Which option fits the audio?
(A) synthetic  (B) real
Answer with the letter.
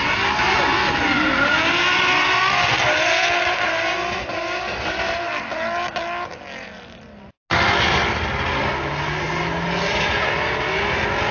B